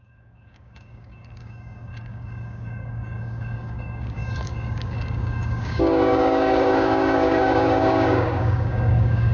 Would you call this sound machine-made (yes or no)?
yes